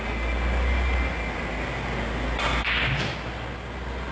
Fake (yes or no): no